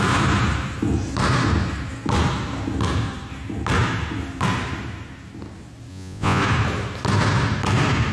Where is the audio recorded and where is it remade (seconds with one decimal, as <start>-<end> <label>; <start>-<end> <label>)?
0.0-5.9 recorded; 5.9-6.4 remade; 6.4-8.1 recorded